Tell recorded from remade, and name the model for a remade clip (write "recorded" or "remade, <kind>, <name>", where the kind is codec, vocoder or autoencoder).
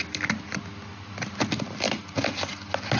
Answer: recorded